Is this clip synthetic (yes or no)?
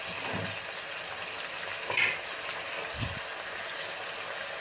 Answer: no